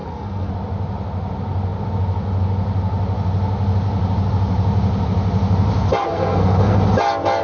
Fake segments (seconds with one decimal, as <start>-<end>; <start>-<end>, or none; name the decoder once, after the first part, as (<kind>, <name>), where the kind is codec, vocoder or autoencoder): 0.0-0.5 (codec, SNAC); 6.0-6.8